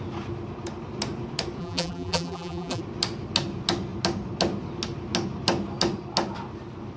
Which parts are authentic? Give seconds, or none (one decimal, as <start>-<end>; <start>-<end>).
0.0-1.6; 2.8-7.0